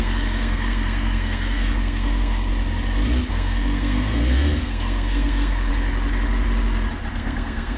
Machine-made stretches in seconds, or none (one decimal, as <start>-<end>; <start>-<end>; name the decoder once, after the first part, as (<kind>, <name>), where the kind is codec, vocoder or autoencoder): 0.0-2.5 (codec, SNAC); 3.3-5.7; 7.1-7.8